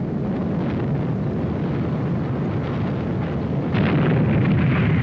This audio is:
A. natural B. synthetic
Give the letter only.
A